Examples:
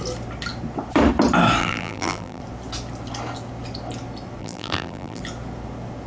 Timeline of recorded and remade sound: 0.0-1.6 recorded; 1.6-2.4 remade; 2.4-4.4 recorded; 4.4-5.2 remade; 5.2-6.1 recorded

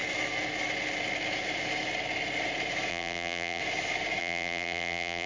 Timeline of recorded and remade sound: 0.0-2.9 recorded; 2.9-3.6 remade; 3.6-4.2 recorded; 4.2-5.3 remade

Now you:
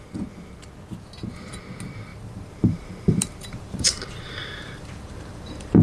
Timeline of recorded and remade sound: 0.0-2.1 recorded; 2.1-5.8 remade